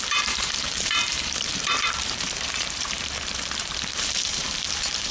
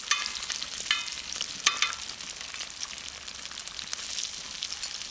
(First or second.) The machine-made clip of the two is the first